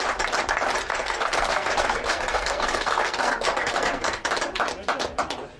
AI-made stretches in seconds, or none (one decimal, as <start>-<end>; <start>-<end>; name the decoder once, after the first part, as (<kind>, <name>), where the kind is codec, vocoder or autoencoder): 0.9-4.3 (codec, SNAC)